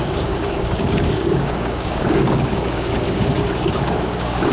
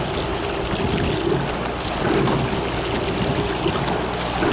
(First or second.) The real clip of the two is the second